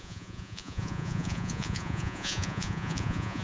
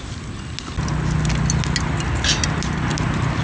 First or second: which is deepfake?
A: first